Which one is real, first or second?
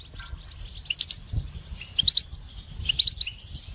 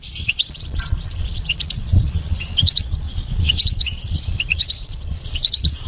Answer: first